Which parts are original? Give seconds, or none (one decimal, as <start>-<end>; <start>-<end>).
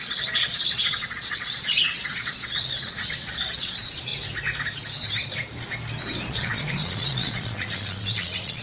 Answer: 4.1-6.3